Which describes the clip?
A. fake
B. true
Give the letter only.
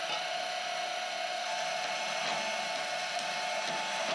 B